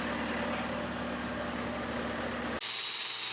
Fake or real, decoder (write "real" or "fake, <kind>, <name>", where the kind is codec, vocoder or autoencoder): real